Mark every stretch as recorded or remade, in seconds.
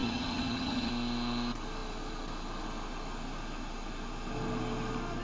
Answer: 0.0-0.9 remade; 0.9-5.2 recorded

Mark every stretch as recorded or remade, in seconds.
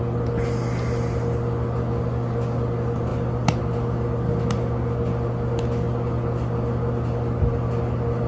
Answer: 0.0-8.3 recorded